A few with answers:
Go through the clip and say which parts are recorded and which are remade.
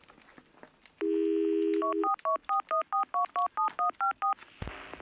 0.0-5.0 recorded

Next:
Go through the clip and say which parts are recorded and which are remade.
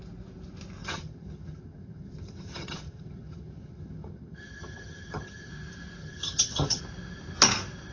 0.0-0.8 recorded; 0.8-5.5 remade; 5.5-6.0 recorded; 6.0-6.8 remade; 6.8-7.9 recorded